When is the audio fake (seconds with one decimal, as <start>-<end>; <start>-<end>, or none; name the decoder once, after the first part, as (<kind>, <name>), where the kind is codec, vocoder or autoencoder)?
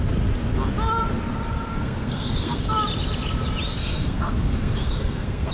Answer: 1.7-2.7 (codec, SNAC); 3.8-5.5